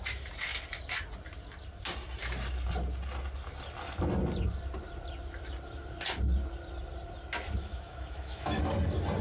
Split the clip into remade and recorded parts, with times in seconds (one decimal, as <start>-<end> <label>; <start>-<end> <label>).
0.0-7.6 recorded; 7.6-8.6 remade; 8.6-9.2 recorded